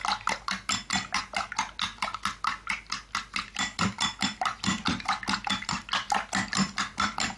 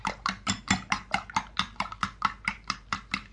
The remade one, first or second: second